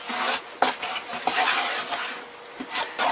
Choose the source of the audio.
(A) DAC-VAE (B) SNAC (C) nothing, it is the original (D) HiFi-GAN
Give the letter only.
C